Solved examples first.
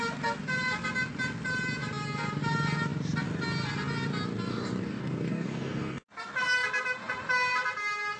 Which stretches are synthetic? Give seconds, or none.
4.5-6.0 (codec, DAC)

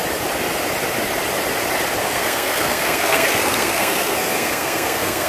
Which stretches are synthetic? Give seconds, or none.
2.0-5.3 (codec, SNAC)

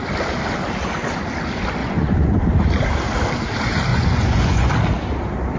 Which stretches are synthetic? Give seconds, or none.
1.8-2.4 (vocoder, Vocos); 3.9-4.7

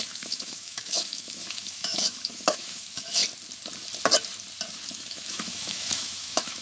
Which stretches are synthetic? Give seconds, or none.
0.0-3.2 (autoencoder, DAC-VAE); 4.9-6.6

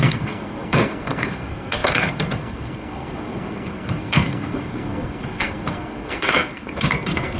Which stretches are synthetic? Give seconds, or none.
0.0-7.4 (codec, SNAC)

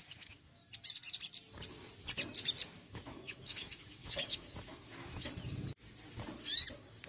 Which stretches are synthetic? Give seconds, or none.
0.0-0.6 (autoencoder, DAC-VAE); 2.8-5.3

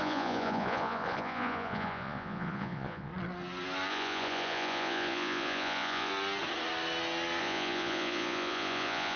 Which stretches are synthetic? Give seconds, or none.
0.0-3.1 (vocoder, Vocos); 3.9-6.1; 7.4-9.2